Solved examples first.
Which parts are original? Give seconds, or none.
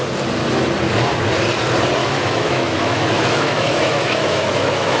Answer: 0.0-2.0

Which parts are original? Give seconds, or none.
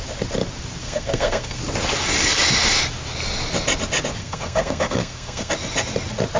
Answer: 0.0-0.8; 1.6-4.2; 5.5-6.4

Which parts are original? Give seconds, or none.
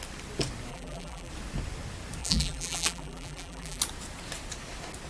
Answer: 0.0-0.7; 1.3-2.2; 3.8-5.1